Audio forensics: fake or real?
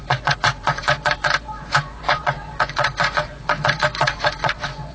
fake